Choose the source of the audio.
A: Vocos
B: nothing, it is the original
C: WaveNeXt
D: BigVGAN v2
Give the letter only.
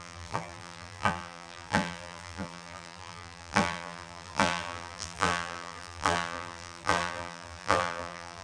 D